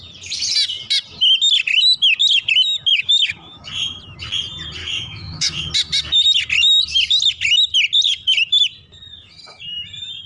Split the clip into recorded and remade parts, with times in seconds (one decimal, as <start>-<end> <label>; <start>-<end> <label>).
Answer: 0.0-2.9 recorded; 2.9-3.7 remade; 3.7-4.8 recorded; 4.8-5.7 remade; 5.7-10.3 recorded

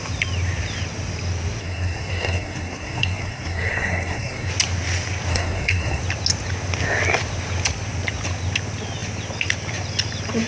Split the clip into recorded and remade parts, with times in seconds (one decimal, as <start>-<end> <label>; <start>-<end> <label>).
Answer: 0.0-1.6 recorded; 1.6-4.5 remade; 4.5-5.3 recorded; 5.3-6.0 remade; 6.0-10.5 recorded

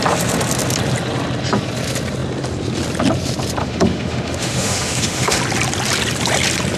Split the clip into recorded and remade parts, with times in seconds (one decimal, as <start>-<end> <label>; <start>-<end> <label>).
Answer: 0.0-3.6 recorded; 3.6-5.4 remade; 5.4-6.8 recorded

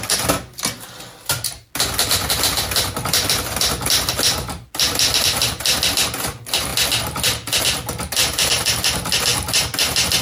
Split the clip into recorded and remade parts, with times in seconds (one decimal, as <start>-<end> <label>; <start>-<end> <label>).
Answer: 0.0-8.2 recorded; 8.2-8.7 remade; 8.7-10.2 recorded

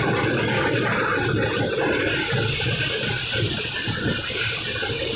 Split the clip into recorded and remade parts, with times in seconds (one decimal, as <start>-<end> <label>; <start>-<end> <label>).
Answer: 0.0-5.2 recorded

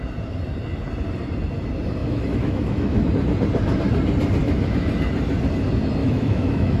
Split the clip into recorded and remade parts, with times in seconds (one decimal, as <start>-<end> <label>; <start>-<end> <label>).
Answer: 0.0-2.0 recorded; 2.0-3.1 remade; 3.1-4.4 recorded; 4.4-4.9 remade; 4.9-6.0 recorded; 6.0-6.8 remade

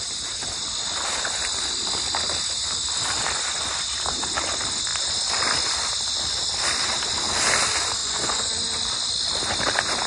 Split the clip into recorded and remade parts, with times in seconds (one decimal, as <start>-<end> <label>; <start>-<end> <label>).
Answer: 0.0-8.0 recorded; 8.0-8.5 remade; 8.5-10.1 recorded